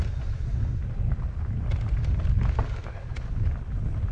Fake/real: real